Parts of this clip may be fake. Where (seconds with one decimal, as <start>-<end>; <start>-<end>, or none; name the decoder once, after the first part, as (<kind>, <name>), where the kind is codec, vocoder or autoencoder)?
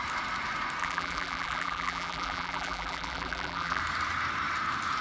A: 0.8-3.8 (vocoder, BigVGAN v2)